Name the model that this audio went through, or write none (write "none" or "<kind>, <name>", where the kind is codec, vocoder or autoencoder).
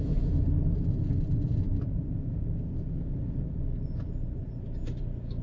none